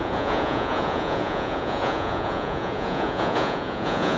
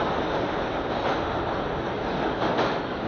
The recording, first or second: second